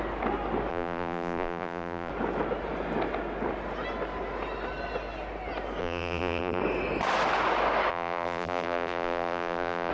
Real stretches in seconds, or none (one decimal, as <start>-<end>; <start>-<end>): 0.0-0.7; 2.1-5.8; 6.6-7.9